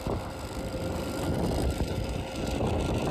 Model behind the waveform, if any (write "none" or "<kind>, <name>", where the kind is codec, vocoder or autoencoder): none